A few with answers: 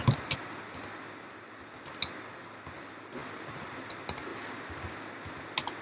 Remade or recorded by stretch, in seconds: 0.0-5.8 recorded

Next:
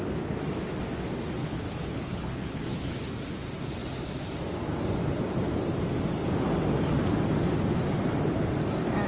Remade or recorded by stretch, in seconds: 0.0-1.4 recorded; 1.4-3.1 remade; 3.1-9.1 recorded

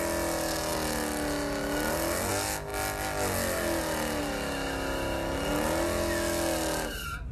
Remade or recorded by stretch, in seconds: 0.0-7.3 recorded

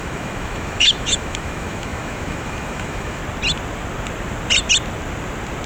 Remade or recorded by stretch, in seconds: 0.0-3.2 remade; 3.2-5.7 recorded